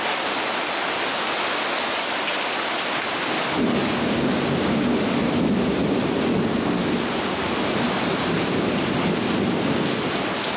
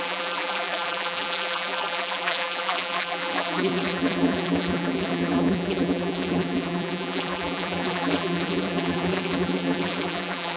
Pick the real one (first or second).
first